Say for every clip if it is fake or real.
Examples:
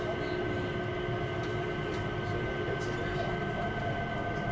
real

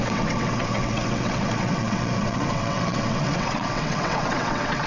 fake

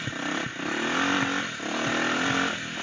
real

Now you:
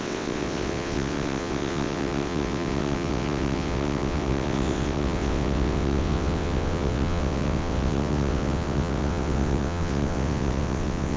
fake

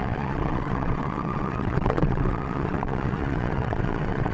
fake